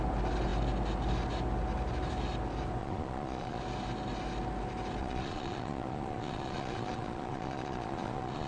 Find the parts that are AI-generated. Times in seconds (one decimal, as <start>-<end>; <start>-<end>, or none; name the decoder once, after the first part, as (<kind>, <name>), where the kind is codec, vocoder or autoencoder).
2.8-3.6 (vocoder, Vocos); 5.0-8.5